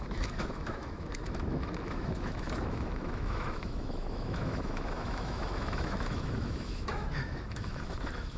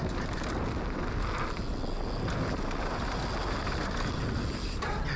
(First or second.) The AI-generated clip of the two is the first